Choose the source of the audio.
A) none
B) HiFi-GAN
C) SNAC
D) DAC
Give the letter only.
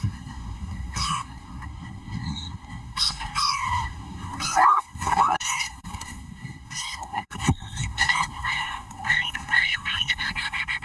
C